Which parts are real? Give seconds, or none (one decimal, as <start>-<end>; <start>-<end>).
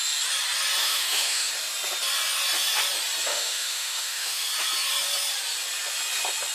0.0-0.8; 1.5-3.3; 4.5-6.5